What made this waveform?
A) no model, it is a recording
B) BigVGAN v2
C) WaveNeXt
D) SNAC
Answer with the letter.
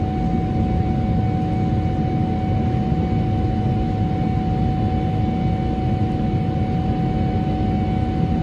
A